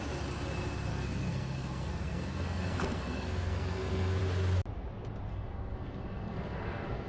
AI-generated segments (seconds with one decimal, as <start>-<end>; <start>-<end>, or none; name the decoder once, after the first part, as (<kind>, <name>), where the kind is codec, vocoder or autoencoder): 0.9-4.2 (codec, SNAC); 5.3-7.1

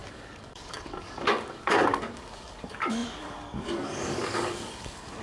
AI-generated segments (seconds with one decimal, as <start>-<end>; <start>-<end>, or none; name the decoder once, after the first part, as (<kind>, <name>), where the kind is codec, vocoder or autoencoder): 0.0-5.2 (codec, DAC)

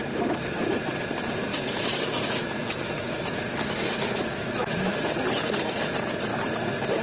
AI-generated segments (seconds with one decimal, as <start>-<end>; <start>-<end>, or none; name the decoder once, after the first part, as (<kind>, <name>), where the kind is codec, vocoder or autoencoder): 1.5-5.2 (autoencoder, DAC-VAE)

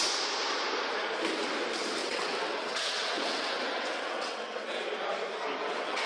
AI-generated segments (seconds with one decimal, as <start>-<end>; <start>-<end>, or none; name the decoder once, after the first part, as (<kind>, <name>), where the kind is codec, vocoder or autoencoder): 2.0-4.7 (vocoder, WaveNeXt); 5.6-6.1

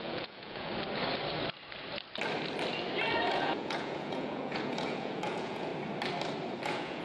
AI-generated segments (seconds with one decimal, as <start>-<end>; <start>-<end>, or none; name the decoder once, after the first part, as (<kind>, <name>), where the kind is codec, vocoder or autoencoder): 0.0-0.7 (vocoder, Vocos); 3.3-5.7; 6.6-7.0

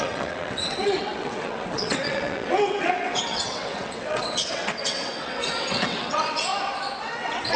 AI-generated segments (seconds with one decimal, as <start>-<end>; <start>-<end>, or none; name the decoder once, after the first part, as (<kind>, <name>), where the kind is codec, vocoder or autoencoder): 0.0-6.5 (vocoder, WaveNeXt); 7.0-7.6